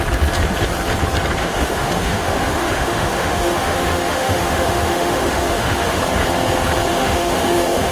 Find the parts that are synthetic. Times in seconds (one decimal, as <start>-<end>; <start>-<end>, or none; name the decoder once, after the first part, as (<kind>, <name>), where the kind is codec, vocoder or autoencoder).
1.4-6.0 (autoencoder, DAC-VAE); 6.9-7.9